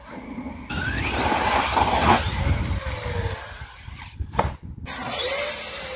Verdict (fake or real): real